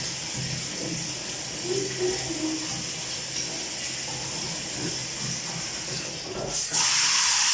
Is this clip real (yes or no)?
yes